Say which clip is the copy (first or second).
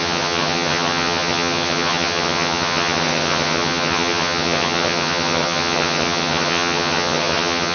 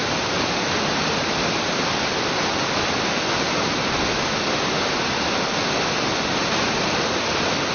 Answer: first